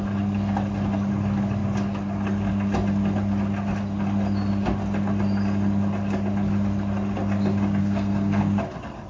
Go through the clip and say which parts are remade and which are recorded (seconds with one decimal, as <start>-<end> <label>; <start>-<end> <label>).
0.0-7.8 recorded; 7.8-8.4 remade; 8.4-9.1 recorded